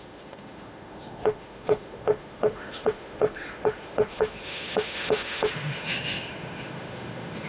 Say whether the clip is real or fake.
fake